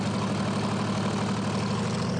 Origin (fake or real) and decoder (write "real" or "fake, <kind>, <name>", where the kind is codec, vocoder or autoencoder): real